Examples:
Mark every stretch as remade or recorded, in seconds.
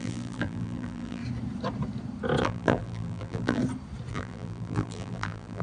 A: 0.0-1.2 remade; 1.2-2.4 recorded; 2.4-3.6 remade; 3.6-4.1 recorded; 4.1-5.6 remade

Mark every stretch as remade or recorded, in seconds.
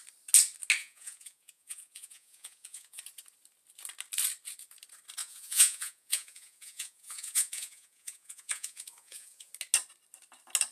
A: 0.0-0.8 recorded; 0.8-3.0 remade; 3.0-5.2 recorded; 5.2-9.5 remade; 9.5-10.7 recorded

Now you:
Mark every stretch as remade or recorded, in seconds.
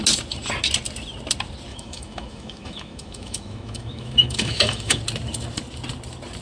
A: 0.0-1.7 recorded; 1.7-5.0 remade; 5.0-6.4 recorded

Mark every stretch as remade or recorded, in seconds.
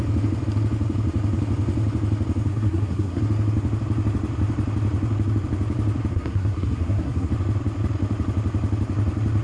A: 0.0-2.5 recorded; 2.5-3.2 remade; 3.2-6.1 recorded; 6.1-7.3 remade; 7.3-9.4 recorded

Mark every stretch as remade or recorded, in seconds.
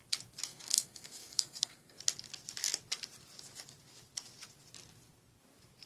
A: 0.0-0.5 recorded; 0.5-2.0 remade; 2.0-5.9 recorded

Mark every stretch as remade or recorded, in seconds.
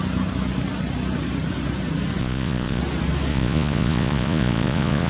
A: 0.0-2.2 recorded; 2.2-2.8 remade; 2.8-3.3 recorded; 3.3-5.1 remade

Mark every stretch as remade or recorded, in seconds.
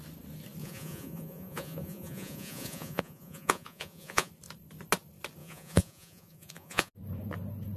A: 0.0-0.6 recorded; 0.6-4.3 remade; 4.3-5.4 recorded; 5.4-6.9 remade; 6.9-7.8 recorded